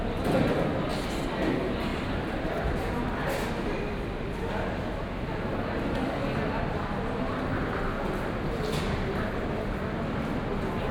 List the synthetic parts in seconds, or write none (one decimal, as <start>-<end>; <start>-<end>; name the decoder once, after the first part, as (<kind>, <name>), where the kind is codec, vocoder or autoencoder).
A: none